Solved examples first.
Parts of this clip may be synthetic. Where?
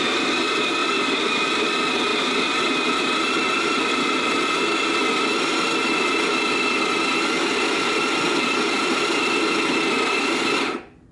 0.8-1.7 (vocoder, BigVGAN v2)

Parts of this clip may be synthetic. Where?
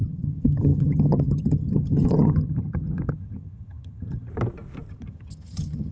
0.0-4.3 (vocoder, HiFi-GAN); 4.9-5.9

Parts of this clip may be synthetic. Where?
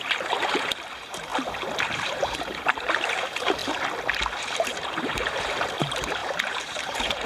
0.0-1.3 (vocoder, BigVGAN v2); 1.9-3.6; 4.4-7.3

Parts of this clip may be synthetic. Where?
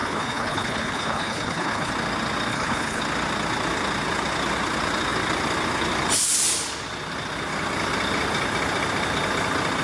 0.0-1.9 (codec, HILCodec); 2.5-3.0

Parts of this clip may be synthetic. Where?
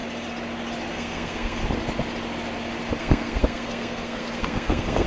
0.9-1.6 (codec, SNAC); 3.0-5.1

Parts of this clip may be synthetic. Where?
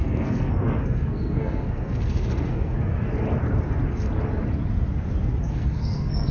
0.0-3.1 (codec, SNAC); 5.4-6.3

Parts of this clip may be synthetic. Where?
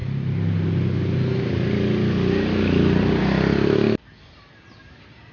none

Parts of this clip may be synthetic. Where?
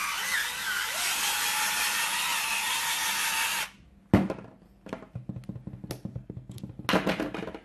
6.1-6.6 (codec, SNAC)